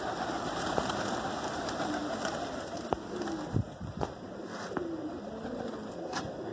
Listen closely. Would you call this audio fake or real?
fake